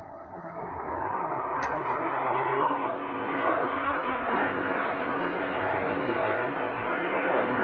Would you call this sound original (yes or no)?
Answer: no